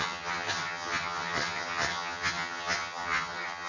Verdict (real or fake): fake